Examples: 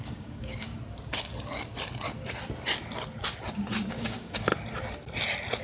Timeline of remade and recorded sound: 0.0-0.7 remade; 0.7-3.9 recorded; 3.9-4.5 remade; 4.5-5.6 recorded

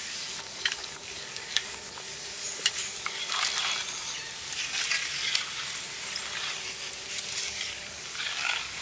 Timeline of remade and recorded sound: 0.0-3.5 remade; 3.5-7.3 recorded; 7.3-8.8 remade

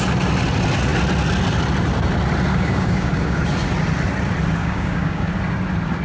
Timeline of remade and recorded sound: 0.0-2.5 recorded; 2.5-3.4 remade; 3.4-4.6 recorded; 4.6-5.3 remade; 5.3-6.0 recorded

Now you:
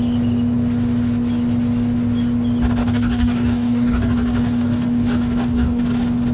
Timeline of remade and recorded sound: 0.0-2.8 recorded; 2.8-5.8 remade; 5.8-6.3 recorded

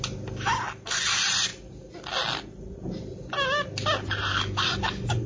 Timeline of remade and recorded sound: 0.0-4.3 recorded; 4.3-5.3 remade